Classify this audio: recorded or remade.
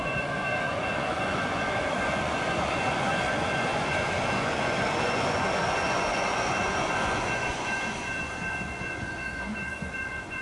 remade